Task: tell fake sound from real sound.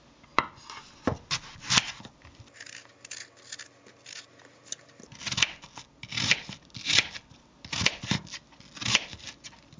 real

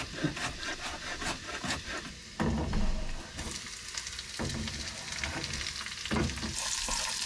real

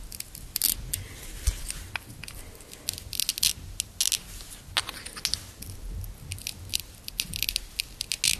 real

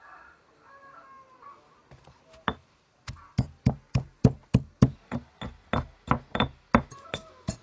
real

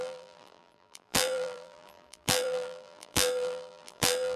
fake